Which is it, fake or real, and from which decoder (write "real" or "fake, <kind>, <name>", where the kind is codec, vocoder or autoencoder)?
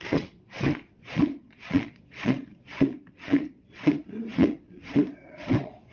fake, vocoder, Vocos